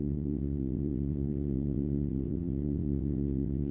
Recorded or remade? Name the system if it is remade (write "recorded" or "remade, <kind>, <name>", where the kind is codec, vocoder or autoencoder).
remade, vocoder, WaveNeXt